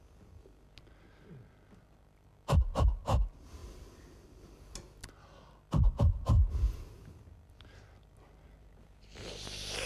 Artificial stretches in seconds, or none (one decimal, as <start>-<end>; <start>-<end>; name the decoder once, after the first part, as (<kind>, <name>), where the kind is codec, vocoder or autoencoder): none